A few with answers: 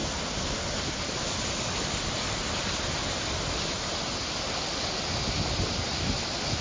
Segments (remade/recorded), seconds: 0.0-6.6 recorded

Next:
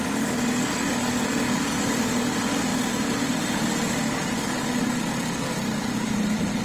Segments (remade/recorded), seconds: 0.0-2.7 recorded; 2.7-3.4 remade; 3.4-5.1 recorded; 5.1-6.6 remade

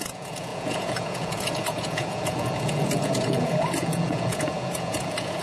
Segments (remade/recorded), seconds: 0.0-5.4 remade